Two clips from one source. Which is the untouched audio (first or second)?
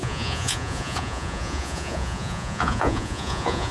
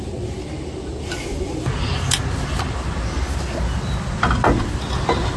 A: second